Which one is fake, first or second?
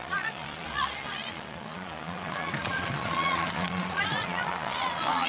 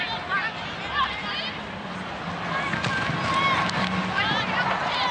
first